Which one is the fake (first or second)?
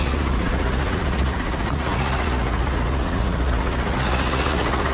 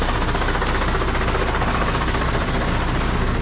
first